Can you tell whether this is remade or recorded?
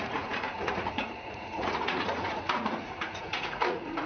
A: remade